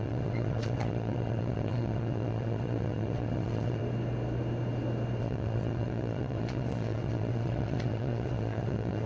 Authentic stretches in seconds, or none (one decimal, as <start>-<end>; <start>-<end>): 3.8-5.2